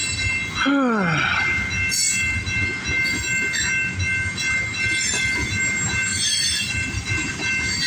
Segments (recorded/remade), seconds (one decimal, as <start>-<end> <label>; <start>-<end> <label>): 0.0-6.1 recorded; 6.1-7.3 remade; 7.3-7.9 recorded